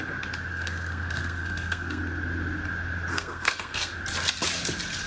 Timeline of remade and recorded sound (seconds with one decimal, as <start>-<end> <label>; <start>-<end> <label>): 0.0-0.5 recorded; 0.5-2.0 remade; 2.0-3.1 recorded; 3.1-3.9 remade; 3.9-5.1 recorded